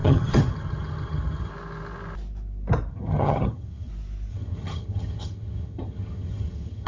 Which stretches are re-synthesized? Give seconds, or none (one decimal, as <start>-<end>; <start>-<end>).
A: 0.0-1.5; 2.9-3.9; 4.3-6.9